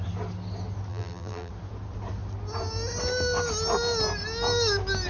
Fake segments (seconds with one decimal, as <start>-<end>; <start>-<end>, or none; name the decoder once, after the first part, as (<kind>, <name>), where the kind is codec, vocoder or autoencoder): 0.9-1.5 (vocoder, BigVGAN v2)